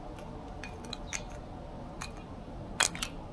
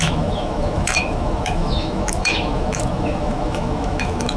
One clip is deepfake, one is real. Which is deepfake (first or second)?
second